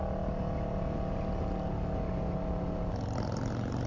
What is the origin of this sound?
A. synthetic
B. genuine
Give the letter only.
B